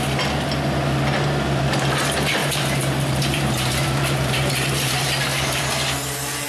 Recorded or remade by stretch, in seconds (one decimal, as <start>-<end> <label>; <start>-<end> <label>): 0.0-2.4 recorded; 2.4-5.7 remade; 5.7-6.5 recorded